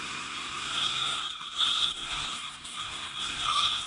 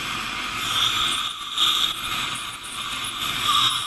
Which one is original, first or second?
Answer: second